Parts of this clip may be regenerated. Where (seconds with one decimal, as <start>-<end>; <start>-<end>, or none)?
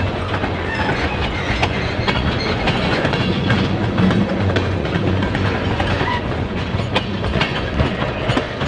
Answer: 0.0-8.7